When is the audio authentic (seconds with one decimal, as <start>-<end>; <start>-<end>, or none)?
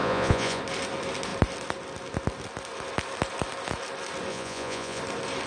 0.6-4.3; 5.0-5.5